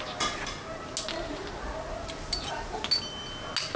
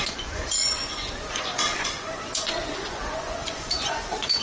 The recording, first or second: first